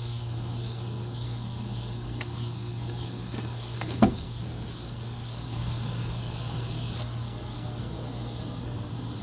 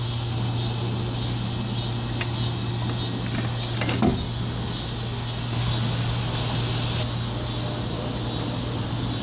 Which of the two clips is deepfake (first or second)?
first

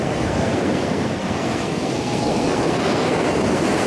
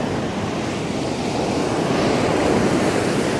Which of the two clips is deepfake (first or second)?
first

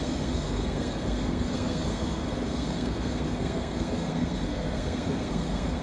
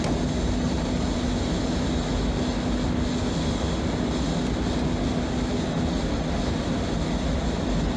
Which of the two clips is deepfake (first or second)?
first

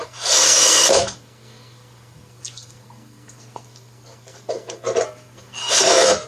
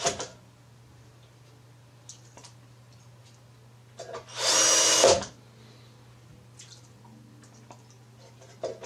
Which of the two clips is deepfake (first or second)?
first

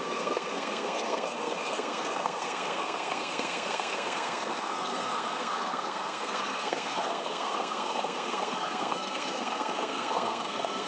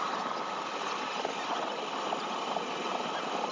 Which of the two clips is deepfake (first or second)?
first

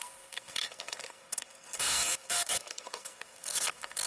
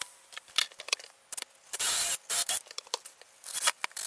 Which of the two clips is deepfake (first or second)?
first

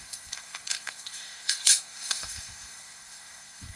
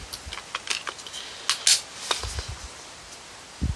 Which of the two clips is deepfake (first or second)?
first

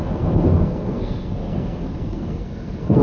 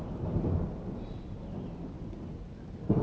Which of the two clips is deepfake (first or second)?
first